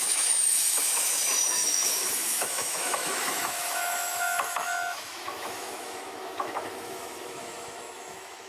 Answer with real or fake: fake